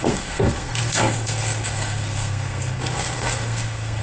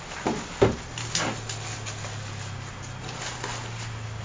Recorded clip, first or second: second